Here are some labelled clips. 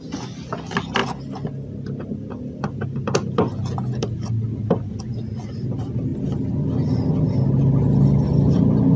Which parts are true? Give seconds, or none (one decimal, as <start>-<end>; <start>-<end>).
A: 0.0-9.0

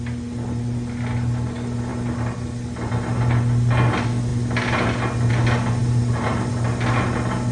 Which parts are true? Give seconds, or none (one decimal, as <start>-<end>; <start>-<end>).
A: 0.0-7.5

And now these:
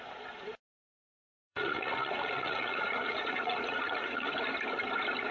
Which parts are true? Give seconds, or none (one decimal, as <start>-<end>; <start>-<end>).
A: 0.0-1.1; 4.3-5.3

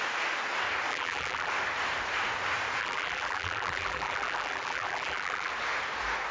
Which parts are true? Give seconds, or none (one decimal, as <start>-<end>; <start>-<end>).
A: 0.0-0.9; 1.5-2.8; 5.5-6.3

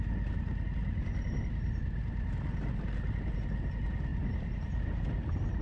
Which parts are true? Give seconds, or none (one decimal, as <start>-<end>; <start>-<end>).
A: 0.0-4.1